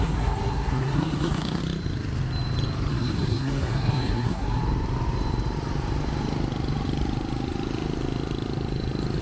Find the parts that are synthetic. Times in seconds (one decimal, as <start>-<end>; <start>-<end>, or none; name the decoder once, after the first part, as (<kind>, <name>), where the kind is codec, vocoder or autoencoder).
0.0-1.6 (codec, SNAC); 2.9-4.6